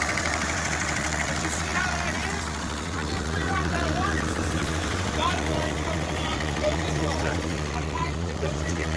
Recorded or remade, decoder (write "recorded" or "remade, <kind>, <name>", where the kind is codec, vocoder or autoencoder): remade, vocoder, WaveNeXt